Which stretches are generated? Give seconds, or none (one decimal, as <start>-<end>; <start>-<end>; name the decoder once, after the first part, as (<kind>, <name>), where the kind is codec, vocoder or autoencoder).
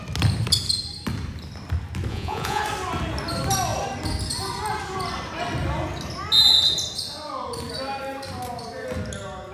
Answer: 2.1-2.6 (vocoder, Vocos)